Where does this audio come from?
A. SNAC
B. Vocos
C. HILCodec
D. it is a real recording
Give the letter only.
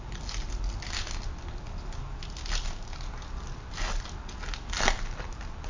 D